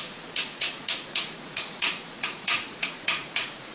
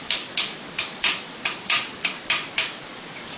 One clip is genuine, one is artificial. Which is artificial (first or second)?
first